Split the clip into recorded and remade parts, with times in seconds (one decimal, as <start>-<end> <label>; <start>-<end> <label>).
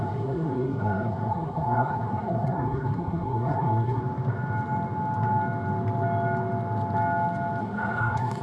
0.0-4.0 remade; 4.0-7.6 recorded; 7.6-8.4 remade